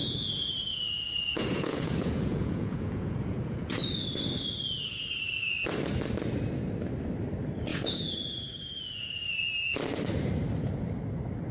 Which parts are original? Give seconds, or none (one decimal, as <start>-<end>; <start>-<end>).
3.8-7.7; 9.1-11.5